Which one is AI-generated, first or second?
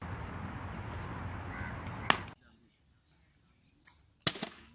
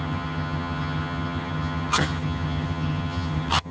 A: second